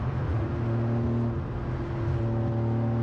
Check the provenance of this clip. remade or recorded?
recorded